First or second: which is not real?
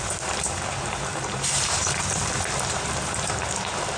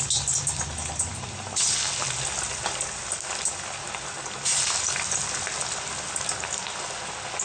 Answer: first